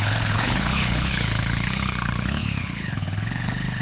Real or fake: fake